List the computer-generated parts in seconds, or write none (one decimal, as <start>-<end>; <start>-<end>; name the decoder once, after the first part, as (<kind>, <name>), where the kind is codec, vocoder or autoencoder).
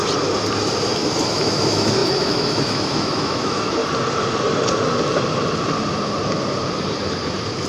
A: 1.3-3.8 (autoencoder, DAC-VAE)